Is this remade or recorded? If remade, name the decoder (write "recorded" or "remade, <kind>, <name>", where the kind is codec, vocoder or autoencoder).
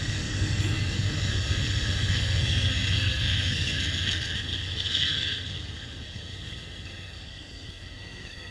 remade, codec, SNAC